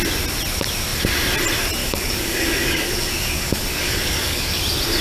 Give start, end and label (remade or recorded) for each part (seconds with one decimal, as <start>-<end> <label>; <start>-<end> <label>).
0.0-1.8 recorded; 1.8-4.6 remade; 4.6-5.0 recorded